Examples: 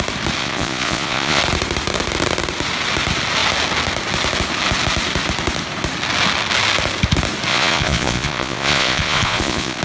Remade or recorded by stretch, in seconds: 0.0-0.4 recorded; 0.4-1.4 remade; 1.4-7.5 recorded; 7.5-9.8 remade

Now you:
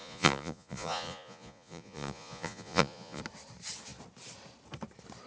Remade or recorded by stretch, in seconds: 0.0-3.2 remade; 3.2-5.3 recorded

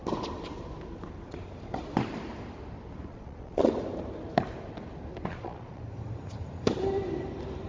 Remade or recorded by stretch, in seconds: 0.0-3.1 recorded; 3.1-3.7 remade; 3.7-5.3 recorded; 5.3-5.8 remade; 5.8-7.7 recorded

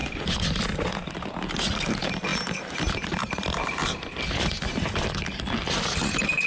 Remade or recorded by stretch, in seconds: 0.0-6.5 recorded

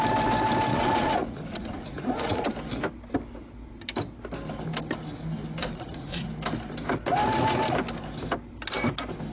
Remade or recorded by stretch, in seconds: 0.0-0.7 recorded; 0.7-2.4 remade; 2.4-5.6 recorded; 5.6-6.3 remade; 6.3-9.3 recorded

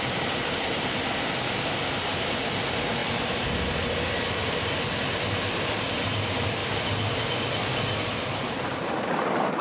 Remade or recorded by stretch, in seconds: 0.0-9.6 recorded

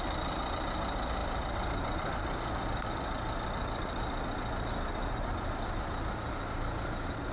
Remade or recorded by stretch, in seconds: 0.0-7.3 recorded